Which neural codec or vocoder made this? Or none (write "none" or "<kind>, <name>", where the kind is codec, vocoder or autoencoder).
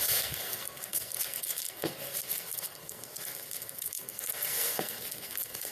codec, SNAC